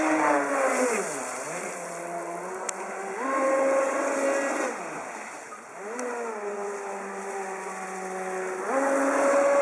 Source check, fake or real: real